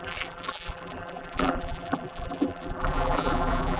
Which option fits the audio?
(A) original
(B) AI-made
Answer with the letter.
B